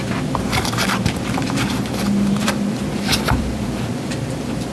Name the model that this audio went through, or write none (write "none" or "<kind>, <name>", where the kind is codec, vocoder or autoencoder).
vocoder, BigVGAN v2